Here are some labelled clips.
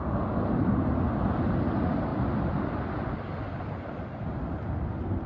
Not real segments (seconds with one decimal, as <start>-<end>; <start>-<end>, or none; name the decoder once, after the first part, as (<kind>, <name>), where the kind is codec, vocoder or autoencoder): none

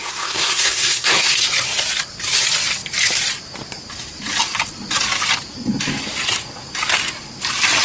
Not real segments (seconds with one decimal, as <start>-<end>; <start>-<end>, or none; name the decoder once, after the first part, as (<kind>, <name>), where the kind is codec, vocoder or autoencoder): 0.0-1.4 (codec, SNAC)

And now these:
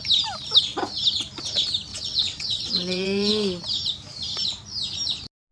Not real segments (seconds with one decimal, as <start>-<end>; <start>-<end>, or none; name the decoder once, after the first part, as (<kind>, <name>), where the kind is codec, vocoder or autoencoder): 1.9-3.3 (vocoder, WaveNeXt)